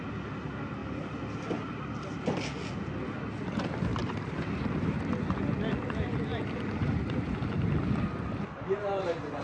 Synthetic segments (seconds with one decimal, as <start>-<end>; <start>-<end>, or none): 4.0-5.1